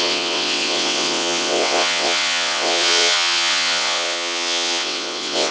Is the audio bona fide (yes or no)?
no